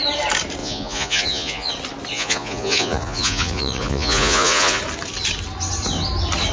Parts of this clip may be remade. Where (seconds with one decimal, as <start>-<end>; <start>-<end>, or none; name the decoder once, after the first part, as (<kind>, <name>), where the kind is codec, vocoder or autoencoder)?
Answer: 0.6-1.7 (vocoder, Vocos); 2.1-4.8